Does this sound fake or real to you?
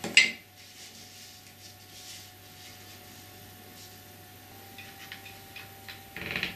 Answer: real